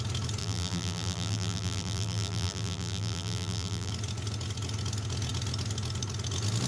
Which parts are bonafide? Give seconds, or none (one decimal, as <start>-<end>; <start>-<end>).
0.0-0.4; 3.9-6.7